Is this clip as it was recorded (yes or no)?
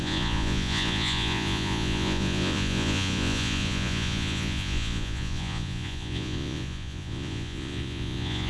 no